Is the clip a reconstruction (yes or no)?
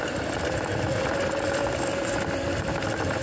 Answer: no